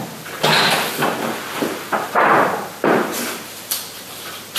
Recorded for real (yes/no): yes